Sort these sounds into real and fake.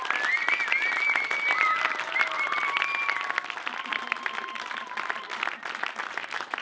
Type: real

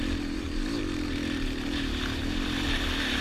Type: fake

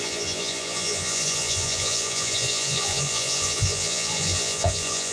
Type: fake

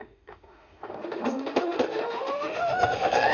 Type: fake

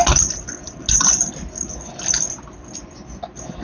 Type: real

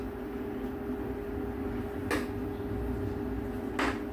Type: real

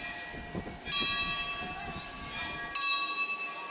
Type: real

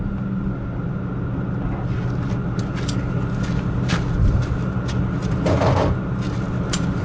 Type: real